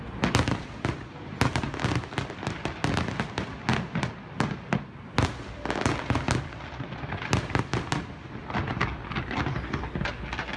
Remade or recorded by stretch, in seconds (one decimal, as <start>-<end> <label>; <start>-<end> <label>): 0.0-10.6 recorded